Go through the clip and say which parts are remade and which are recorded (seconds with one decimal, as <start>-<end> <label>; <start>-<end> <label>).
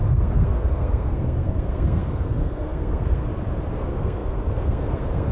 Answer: 0.0-3.2 remade; 3.2-3.7 recorded; 3.7-5.3 remade